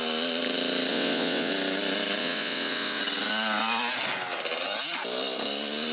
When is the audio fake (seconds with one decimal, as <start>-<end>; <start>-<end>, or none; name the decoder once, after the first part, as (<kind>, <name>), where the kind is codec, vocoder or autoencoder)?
0.9-1.5 (vocoder, WaveNeXt); 2.2-3.0

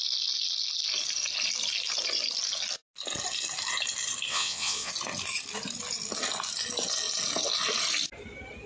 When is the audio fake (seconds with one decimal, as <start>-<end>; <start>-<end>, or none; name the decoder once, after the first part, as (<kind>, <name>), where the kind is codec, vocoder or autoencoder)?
4.3-4.9 (vocoder, WaveNeXt)

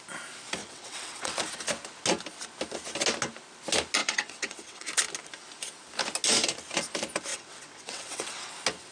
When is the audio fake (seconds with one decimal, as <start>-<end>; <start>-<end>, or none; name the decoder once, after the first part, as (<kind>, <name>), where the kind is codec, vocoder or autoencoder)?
0.6-1.3 (vocoder, WaveNeXt); 4.0-4.9; 7.3-8.5

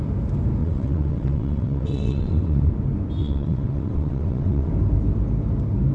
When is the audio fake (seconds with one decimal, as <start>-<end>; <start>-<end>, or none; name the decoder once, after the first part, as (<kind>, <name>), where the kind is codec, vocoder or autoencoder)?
0.6-2.7 (vocoder, WaveNeXt); 3.2-4.7

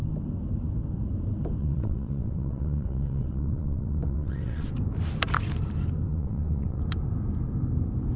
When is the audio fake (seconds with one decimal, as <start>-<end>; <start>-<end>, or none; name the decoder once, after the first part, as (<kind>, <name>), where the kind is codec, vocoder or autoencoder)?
1.6-4.7 (vocoder, WaveNeXt); 6.1-6.8

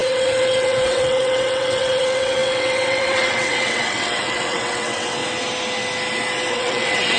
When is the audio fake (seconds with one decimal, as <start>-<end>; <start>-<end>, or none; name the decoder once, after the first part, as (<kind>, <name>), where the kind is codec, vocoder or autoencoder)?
0.0-5.2 (vocoder, WaveNeXt); 6.5-7.2